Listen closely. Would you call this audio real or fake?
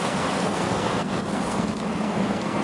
fake